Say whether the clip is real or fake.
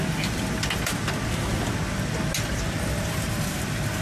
real